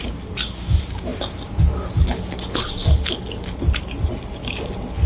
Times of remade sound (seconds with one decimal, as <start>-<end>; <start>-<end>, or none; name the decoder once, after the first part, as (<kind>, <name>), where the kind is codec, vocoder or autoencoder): none